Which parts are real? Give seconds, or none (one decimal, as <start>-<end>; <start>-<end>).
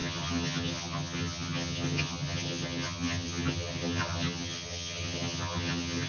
none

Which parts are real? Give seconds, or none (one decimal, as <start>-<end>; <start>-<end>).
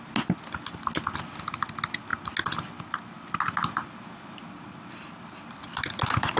0.0-6.4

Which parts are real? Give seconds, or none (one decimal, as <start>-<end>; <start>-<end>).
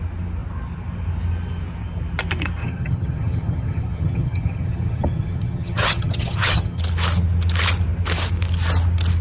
0.0-2.6; 6.8-9.2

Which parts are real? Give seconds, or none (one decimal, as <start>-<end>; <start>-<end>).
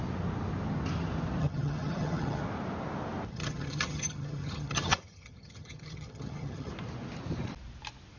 0.0-1.4; 2.4-3.3; 6.7-8.2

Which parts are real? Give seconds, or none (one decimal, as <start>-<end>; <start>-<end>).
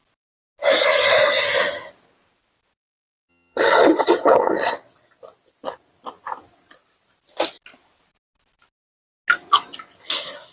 0.0-3.3; 4.7-10.5